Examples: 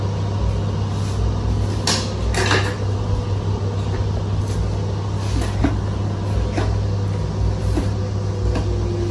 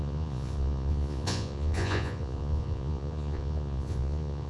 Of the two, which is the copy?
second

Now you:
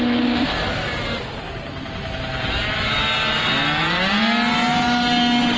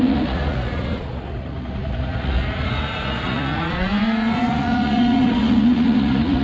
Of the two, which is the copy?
second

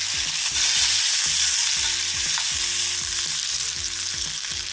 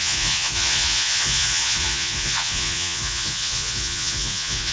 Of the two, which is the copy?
second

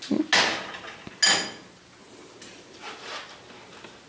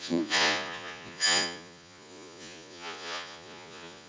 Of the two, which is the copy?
second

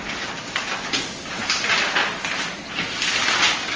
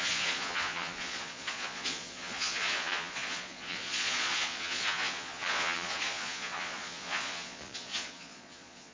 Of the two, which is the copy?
second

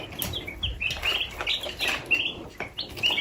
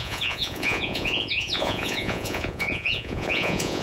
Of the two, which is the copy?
second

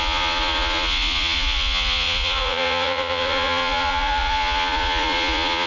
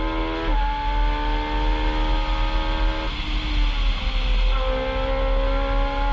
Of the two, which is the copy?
first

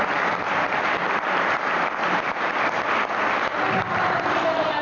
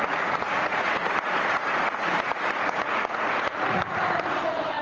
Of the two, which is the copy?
second